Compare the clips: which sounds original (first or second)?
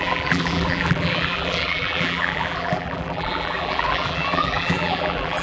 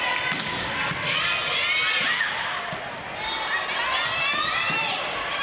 second